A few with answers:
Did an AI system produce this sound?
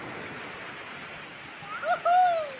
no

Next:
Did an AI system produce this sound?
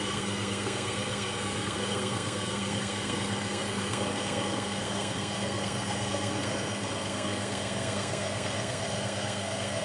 yes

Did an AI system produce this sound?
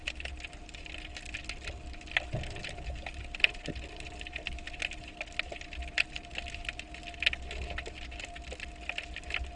no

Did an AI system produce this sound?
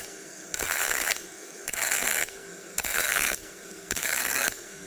yes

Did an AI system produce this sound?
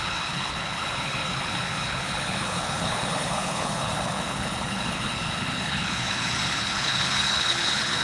yes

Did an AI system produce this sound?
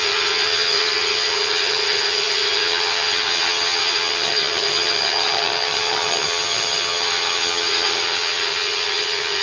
yes